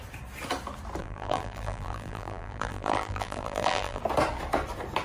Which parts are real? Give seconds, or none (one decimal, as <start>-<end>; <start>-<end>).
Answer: 0.0-1.0; 4.0-5.0